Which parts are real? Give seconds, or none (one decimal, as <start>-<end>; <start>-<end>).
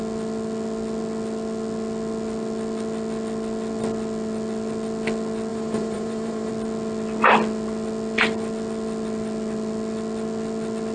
0.0-5.5; 6.5-10.9